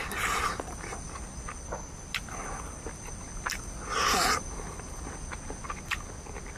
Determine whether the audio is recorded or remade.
recorded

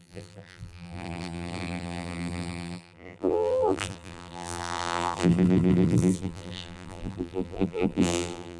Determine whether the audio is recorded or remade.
remade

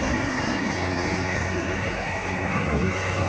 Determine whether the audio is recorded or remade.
remade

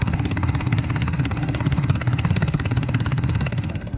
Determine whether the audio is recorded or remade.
remade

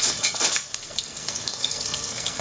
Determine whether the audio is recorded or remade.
remade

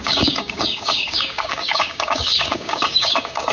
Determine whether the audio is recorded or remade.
remade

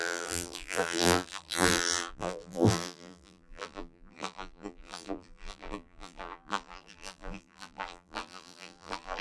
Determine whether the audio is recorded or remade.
remade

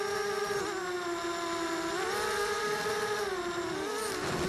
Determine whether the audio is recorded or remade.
recorded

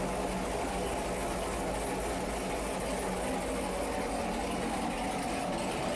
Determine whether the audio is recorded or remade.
recorded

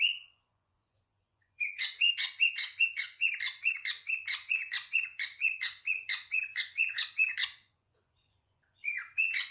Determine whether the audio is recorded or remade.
remade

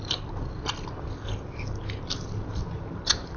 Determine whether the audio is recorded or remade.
recorded